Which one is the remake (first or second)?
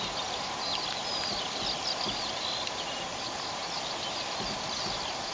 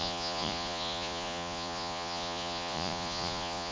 second